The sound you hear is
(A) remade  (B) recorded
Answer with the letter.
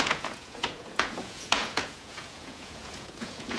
A